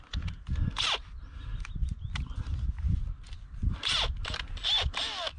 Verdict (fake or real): real